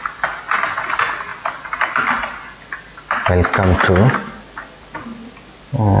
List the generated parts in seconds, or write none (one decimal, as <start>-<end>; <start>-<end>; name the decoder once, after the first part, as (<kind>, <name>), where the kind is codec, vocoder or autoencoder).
none